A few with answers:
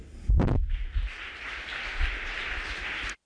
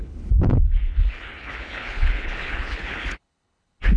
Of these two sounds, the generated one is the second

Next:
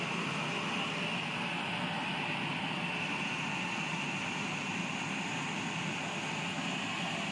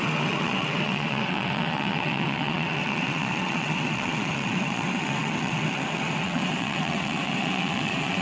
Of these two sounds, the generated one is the second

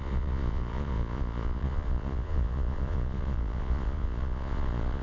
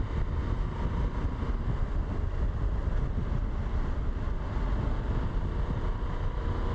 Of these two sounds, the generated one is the first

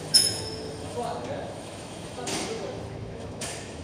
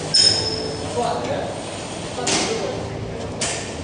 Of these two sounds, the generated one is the first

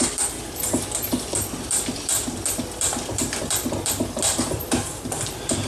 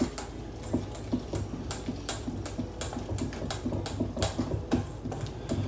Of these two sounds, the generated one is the first